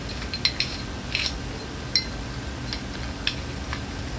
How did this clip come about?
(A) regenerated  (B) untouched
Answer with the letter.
B